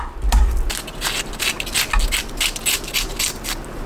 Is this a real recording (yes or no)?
yes